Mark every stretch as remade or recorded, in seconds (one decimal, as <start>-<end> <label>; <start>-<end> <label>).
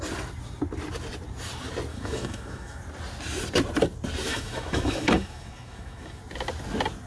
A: 0.0-1.9 recorded; 1.9-2.8 remade; 2.8-4.3 recorded; 4.3-6.2 remade; 6.2-7.1 recorded